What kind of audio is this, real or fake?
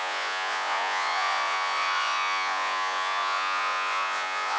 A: fake